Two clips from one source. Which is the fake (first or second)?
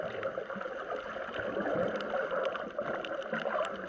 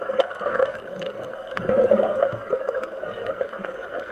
second